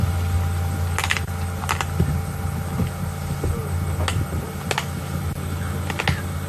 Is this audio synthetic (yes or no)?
no